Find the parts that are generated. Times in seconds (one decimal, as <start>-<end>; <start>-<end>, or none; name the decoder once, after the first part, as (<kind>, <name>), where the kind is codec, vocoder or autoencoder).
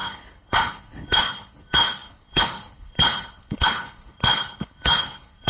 0.0-5.5 (codec, HILCodec)